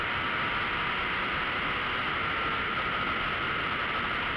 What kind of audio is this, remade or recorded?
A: recorded